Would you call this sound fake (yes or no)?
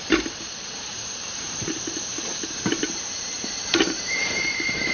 yes